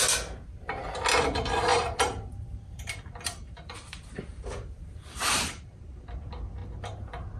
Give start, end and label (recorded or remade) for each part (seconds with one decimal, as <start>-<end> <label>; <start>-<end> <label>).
0.0-1.7 recorded; 1.7-6.1 remade; 6.1-7.4 recorded